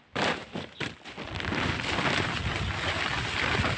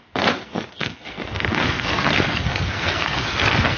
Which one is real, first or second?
first